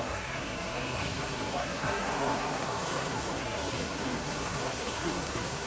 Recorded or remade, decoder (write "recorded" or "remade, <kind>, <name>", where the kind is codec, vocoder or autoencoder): remade, codec, SNAC